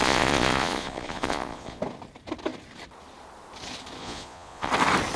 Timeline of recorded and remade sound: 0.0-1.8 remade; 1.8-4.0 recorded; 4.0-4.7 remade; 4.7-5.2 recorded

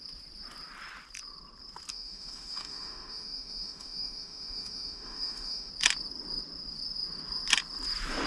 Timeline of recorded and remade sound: 0.0-1.9 recorded; 1.9-5.7 remade; 5.7-8.3 recorded

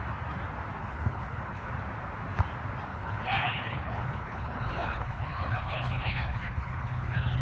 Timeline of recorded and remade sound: 0.0-0.8 recorded; 0.8-1.7 remade; 1.7-2.9 recorded; 2.9-7.4 remade

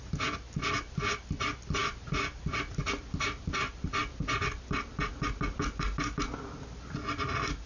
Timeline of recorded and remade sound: 0.0-7.7 recorded

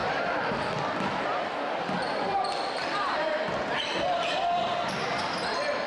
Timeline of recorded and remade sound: 0.0-1.3 recorded; 1.3-2.0 remade; 2.0-5.9 recorded

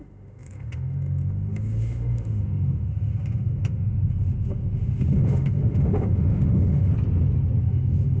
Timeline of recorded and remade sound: 0.0-6.9 remade; 6.9-7.6 recorded; 7.6-8.2 remade

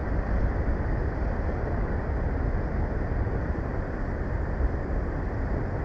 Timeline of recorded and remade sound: 0.0-3.5 recorded; 3.5-5.8 remade

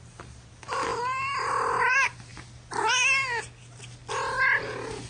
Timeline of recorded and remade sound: 0.0-5.1 recorded